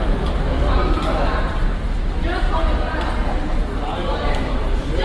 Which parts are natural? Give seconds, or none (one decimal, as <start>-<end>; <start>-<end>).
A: 2.3-3.3